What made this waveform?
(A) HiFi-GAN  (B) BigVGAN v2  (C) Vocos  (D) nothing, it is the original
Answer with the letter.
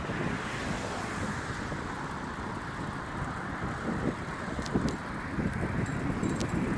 B